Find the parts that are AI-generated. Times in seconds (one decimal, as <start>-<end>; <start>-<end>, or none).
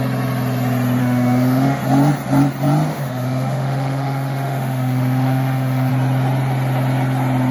1.0-1.8; 2.9-5.9